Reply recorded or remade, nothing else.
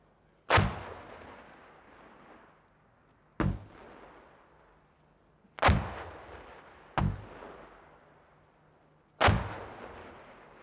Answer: recorded